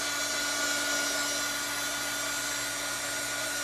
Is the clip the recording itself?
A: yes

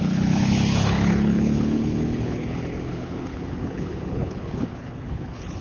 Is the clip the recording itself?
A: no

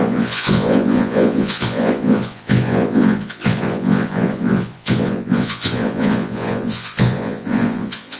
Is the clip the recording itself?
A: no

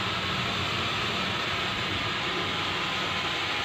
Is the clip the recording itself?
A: yes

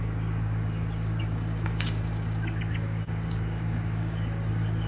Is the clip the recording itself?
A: no